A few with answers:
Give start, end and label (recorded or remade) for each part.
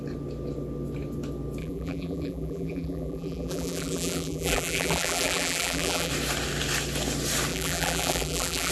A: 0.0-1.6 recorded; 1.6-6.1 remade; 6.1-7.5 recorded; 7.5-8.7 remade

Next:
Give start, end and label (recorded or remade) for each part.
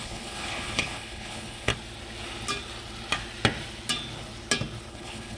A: 0.0-1.7 remade; 1.7-4.9 recorded; 4.9-5.4 remade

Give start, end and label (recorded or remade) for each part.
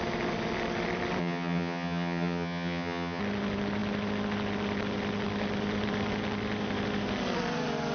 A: 0.0-1.2 recorded; 1.2-3.2 remade; 3.2-7.9 recorded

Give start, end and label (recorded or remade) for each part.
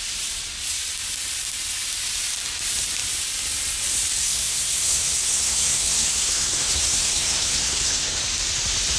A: 0.0-4.2 recorded; 4.2-8.2 remade; 8.2-9.0 recorded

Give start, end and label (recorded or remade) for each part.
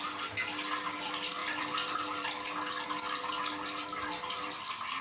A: 0.0-1.4 recorded; 1.4-2.3 remade; 2.3-5.0 recorded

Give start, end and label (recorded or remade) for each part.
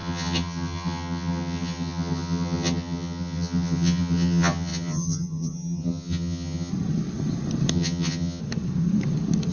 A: 0.0-6.7 remade; 6.7-7.7 recorded; 7.7-8.4 remade; 8.4-9.5 recorded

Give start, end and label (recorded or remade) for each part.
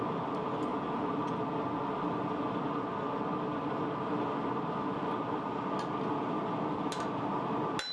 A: 0.0-7.9 recorded